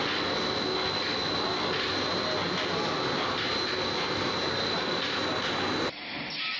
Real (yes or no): yes